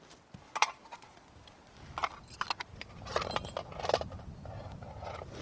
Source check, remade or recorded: recorded